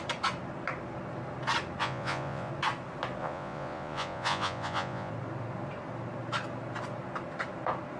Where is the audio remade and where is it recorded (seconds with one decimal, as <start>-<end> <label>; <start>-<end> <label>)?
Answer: 0.0-1.8 recorded; 1.8-2.5 remade; 2.5-3.2 recorded; 3.2-5.1 remade; 5.1-8.0 recorded